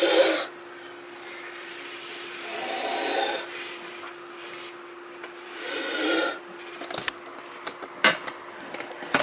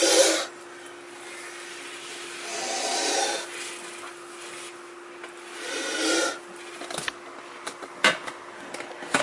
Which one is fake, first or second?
first